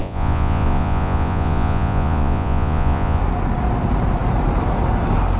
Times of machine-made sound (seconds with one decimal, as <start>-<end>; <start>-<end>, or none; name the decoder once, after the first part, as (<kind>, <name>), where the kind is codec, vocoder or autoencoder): 0.0-3.2 (vocoder, Vocos)